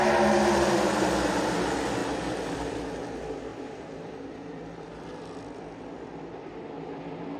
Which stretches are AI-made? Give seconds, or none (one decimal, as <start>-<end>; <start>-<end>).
2.0-2.8; 3.5-7.4